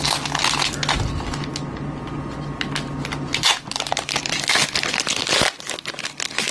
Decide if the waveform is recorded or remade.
recorded